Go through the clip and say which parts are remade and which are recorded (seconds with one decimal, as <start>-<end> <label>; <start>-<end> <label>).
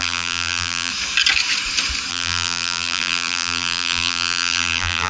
0.0-0.9 remade; 0.9-2.1 recorded; 2.1-5.1 remade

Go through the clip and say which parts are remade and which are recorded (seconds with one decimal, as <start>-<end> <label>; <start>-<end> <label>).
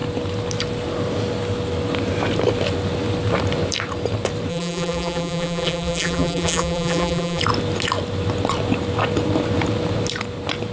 0.0-4.5 recorded; 4.5-7.4 remade; 7.4-10.7 recorded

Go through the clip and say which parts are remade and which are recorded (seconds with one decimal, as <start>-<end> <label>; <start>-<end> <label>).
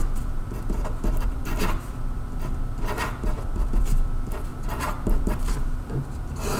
0.0-1.4 remade; 1.4-4.5 recorded; 4.5-6.6 remade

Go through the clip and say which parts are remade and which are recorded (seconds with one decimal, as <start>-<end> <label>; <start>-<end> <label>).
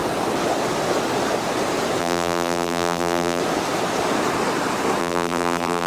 0.0-2.0 recorded; 2.0-3.4 remade; 3.4-5.0 recorded; 5.0-5.9 remade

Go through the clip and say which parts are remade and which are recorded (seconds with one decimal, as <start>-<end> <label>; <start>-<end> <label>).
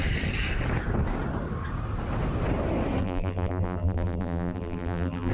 0.0-3.0 recorded; 3.0-5.3 remade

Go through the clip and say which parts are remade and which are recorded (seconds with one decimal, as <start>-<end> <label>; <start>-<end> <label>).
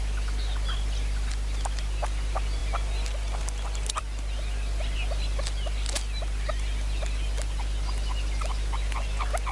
0.0-9.5 recorded